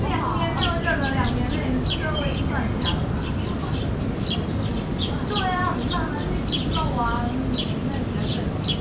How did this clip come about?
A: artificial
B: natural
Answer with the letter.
B